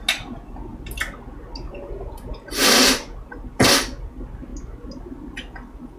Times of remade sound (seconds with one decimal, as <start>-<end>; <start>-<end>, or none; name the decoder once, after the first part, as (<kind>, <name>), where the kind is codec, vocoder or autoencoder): none